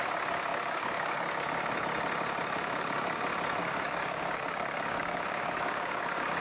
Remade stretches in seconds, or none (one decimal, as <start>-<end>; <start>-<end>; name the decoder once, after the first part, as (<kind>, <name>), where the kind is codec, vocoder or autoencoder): 0.5-1.4 (codec, DAC); 2.4-3.2; 3.6-6.4